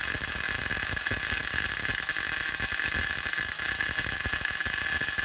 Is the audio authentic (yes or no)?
no